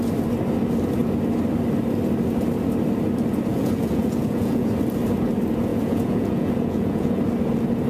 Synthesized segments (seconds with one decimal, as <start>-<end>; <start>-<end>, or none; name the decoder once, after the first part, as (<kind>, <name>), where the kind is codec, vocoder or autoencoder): 3.5-4.7 (vocoder, Vocos); 5.7-7.2